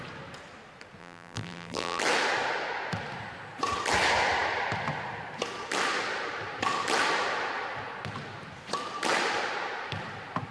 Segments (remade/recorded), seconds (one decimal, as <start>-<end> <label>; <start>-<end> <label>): 0.0-1.0 recorded; 1.0-2.0 remade; 2.0-10.5 recorded